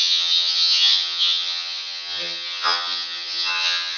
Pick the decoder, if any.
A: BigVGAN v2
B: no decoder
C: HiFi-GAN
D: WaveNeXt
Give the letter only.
C